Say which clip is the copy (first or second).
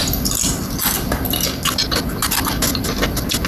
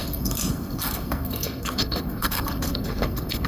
second